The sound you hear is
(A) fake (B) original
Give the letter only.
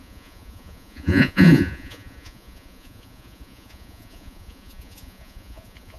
A